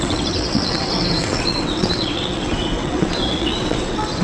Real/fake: fake